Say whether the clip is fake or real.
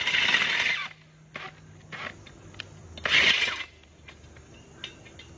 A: real